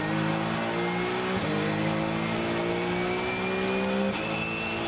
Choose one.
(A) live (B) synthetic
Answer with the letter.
A